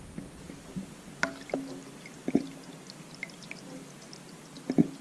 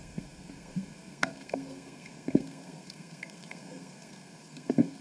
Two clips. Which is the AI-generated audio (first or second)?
second